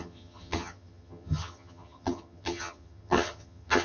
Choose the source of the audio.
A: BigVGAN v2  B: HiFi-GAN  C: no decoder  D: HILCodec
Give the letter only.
B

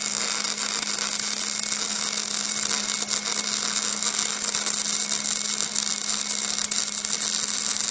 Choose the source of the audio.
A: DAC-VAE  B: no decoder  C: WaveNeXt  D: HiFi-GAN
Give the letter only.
B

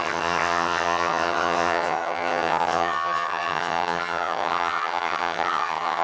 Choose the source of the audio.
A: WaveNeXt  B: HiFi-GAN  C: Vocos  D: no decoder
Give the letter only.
B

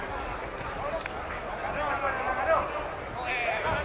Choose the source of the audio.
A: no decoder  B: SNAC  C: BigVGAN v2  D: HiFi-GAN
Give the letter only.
A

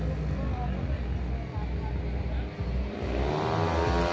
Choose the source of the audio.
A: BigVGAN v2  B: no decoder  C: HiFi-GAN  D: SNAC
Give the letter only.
B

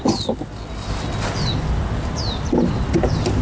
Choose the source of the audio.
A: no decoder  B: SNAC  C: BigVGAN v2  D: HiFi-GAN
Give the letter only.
A